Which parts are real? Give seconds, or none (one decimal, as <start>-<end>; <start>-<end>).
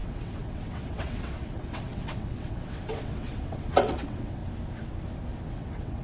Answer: 4.4-5.5